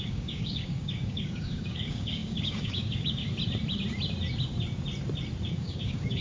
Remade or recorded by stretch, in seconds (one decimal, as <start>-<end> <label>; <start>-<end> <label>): 0.0-3.2 remade; 3.2-5.5 recorded; 5.5-6.2 remade

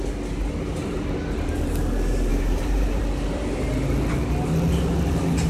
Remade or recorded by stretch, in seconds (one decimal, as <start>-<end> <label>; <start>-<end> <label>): 0.0-2.3 recorded; 2.3-3.0 remade; 3.0-5.5 recorded

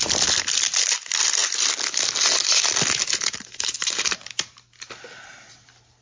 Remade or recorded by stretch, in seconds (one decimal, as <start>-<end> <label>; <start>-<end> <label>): 0.0-6.0 recorded

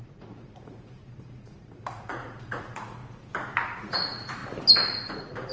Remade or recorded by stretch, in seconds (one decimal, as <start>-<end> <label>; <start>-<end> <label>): 0.0-3.0 remade; 3.0-3.8 recorded; 3.8-4.4 remade; 4.4-5.1 recorded; 5.1-5.5 remade

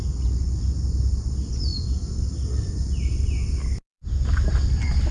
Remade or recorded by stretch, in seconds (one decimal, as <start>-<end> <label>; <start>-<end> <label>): 0.0-5.1 recorded

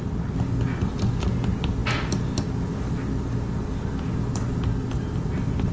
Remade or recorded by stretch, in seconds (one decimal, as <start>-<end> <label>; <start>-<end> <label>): 0.0-5.7 recorded

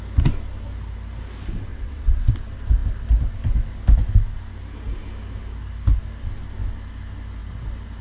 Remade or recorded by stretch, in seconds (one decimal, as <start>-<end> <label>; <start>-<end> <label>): 0.0-1.7 recorded; 1.7-2.3 remade; 2.3-8.0 recorded

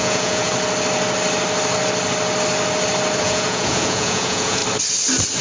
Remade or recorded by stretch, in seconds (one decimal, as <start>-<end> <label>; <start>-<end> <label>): 0.0-0.5 remade; 0.5-3.2 recorded; 3.2-4.6 remade; 4.6-5.4 recorded